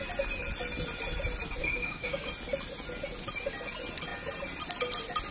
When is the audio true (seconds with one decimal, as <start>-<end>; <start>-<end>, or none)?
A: 0.0-1.6; 2.3-5.3